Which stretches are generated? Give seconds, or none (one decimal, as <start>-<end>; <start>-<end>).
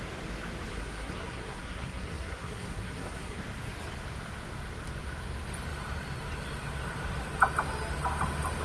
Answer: 0.7-3.4